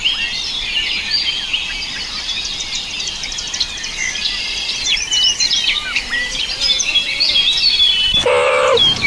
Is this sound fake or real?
fake